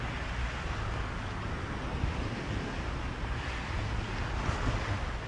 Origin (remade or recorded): recorded